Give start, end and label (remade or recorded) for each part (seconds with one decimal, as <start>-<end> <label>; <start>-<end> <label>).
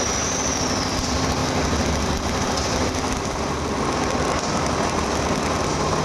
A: 0.0-6.0 recorded